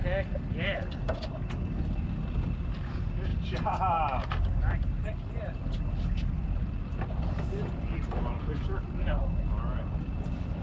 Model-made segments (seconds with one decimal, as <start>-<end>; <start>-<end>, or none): none